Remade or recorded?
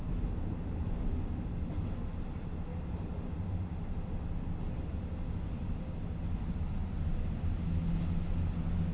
recorded